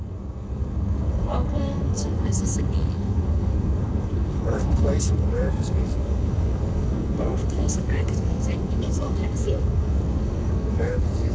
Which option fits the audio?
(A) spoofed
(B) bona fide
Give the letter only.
A